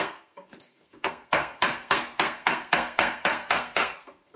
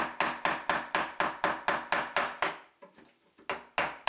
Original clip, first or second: second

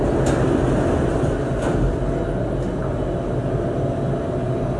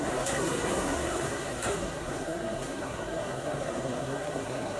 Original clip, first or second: first